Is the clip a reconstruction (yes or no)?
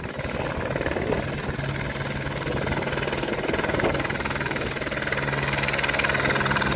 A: no